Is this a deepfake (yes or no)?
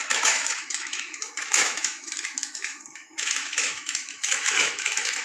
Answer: yes